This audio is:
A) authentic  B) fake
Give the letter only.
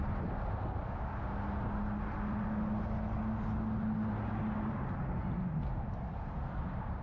A